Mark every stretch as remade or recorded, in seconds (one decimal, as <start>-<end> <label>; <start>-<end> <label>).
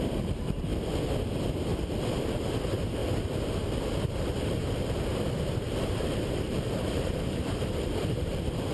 0.0-0.7 remade; 0.7-2.2 recorded; 2.2-3.0 remade; 3.0-5.7 recorded; 5.7-8.7 remade